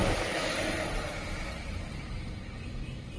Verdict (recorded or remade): recorded